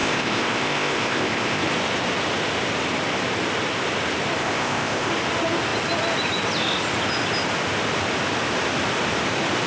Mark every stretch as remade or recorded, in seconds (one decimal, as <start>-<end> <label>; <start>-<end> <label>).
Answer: 0.0-1.6 remade; 1.6-4.4 recorded; 4.4-5.1 remade; 5.1-9.7 recorded